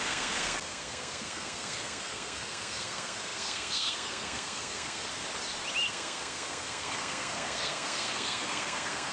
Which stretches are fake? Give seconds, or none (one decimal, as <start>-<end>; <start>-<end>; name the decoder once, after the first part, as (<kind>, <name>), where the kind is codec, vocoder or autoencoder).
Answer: 0.0-5.1 (codec, SNAC); 5.9-9.1